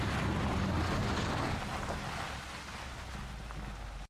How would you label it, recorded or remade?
recorded